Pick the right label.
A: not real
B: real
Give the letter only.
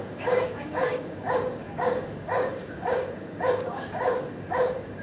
A